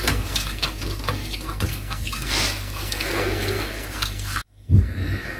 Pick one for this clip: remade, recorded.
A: remade